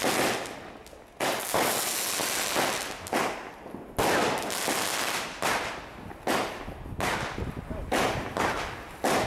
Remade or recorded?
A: recorded